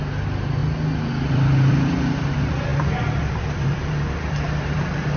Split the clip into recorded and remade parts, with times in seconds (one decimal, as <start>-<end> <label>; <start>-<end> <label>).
0.0-0.6 remade; 0.6-1.3 recorded; 1.3-5.2 remade